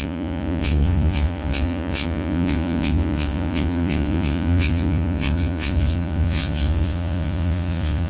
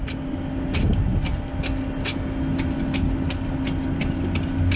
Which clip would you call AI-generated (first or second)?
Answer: first